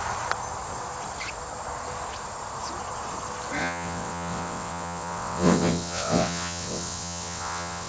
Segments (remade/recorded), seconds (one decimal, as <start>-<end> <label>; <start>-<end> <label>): 0.0-3.6 recorded; 3.6-7.9 remade